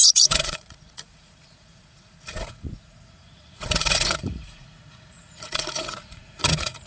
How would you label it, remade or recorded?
remade